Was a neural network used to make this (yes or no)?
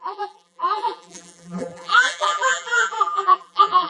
yes